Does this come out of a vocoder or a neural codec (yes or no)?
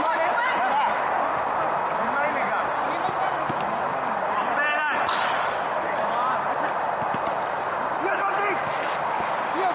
no